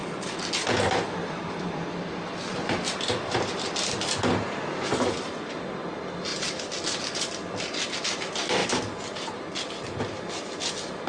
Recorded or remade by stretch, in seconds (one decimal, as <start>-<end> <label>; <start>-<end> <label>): 0.0-0.5 remade; 0.5-1.2 recorded; 1.2-5.6 remade; 5.6-6.3 recorded; 6.3-6.8 remade; 6.8-8.6 recorded; 8.6-10.2 remade; 10.2-11.1 recorded